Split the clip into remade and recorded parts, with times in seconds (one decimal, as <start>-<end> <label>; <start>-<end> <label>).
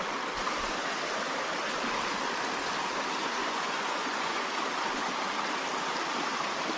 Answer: 0.0-3.4 recorded; 3.4-4.5 remade; 4.5-6.8 recorded